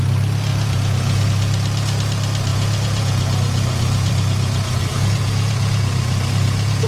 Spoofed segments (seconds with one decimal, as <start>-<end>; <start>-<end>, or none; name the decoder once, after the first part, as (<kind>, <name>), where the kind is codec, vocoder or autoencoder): 0.5-1.3 (vocoder, Vocos); 2.5-6.9